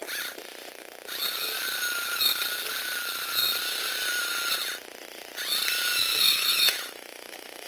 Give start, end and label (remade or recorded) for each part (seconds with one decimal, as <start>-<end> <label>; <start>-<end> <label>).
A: 0.0-5.9 recorded; 5.9-7.7 remade